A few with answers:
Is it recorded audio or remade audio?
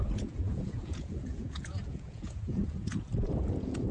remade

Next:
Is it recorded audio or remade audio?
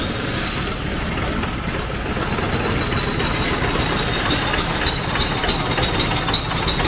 recorded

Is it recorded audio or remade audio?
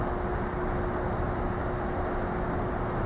recorded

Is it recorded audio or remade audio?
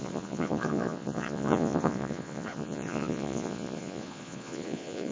remade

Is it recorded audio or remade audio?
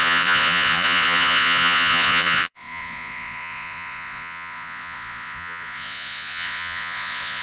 remade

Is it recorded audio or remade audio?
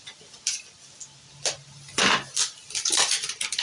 recorded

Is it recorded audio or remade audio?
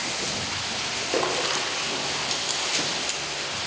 recorded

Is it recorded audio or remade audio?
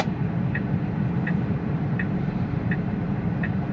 remade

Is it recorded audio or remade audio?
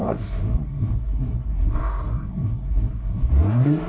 remade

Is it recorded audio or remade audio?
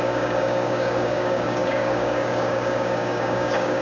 remade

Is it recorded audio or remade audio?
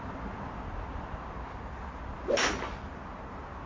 recorded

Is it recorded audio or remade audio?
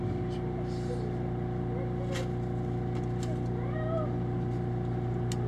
recorded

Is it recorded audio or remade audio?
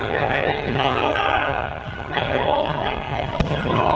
remade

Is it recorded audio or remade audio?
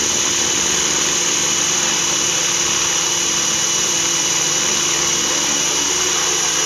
remade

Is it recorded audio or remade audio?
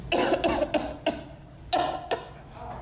recorded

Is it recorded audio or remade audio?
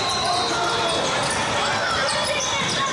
recorded